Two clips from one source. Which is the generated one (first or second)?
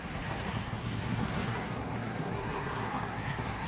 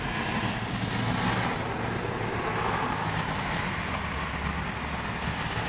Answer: first